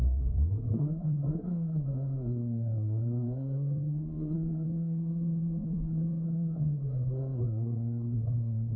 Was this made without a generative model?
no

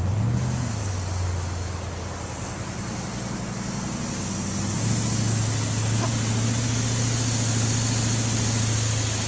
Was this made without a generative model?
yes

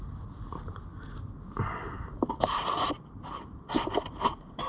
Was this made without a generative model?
yes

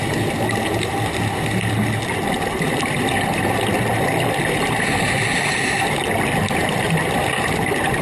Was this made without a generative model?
yes